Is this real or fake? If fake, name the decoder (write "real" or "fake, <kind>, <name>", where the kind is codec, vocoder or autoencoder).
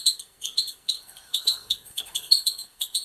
fake, codec, SNAC